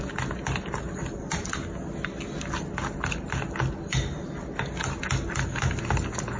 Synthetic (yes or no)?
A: no